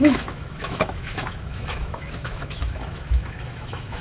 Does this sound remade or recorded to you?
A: remade